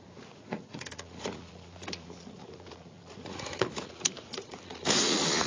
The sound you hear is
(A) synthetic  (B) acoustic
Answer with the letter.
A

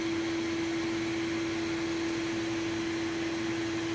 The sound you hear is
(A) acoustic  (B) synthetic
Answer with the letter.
A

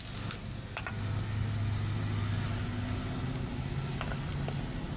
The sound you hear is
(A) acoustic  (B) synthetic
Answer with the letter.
A